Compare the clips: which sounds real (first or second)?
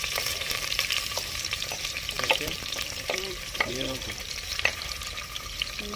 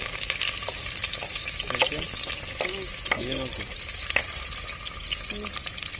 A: second